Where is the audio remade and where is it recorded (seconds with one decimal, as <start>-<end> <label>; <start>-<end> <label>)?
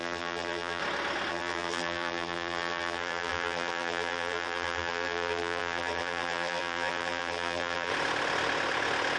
0.0-0.8 remade; 0.8-1.3 recorded; 1.3-7.9 remade; 7.9-9.2 recorded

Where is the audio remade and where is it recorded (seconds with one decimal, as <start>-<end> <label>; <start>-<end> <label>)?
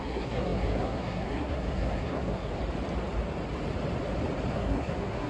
0.0-2.5 remade; 2.5-4.5 recorded; 4.5-5.3 remade